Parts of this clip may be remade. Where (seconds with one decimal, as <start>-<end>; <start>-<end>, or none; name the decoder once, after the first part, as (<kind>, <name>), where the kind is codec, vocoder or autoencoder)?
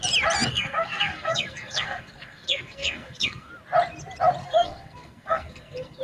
0.5-3.5 (codec, SNAC); 4.4-6.0